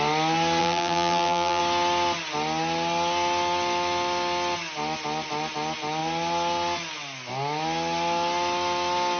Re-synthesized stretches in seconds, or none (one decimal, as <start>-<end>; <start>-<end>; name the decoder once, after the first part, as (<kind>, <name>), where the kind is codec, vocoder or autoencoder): 0.6-1.6 (vocoder, BigVGAN v2)